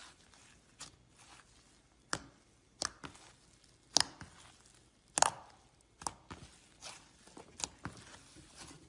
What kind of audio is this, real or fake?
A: real